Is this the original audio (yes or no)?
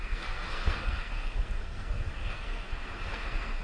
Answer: no